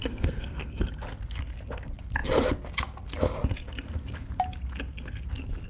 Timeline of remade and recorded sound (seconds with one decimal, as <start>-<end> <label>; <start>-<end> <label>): 0.0-0.9 remade; 0.9-5.7 recorded